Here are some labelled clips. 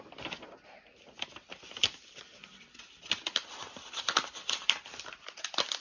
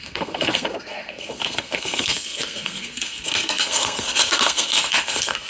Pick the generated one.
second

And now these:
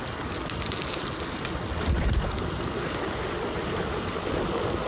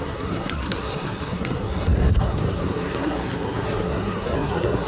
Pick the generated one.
second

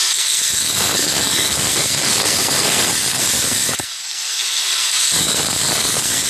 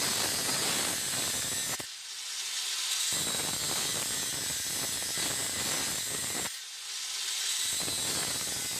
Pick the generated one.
first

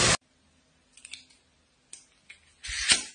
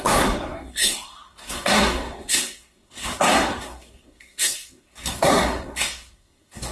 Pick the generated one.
second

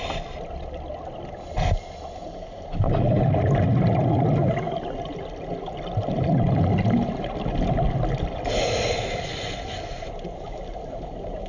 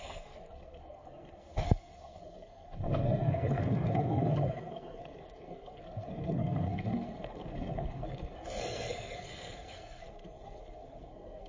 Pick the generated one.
second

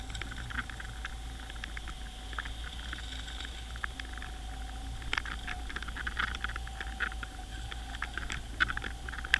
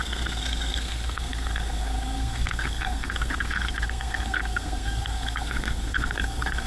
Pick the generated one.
second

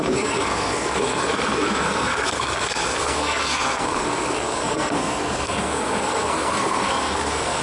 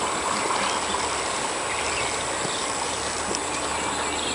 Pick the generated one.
first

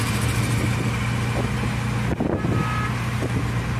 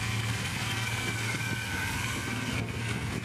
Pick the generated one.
second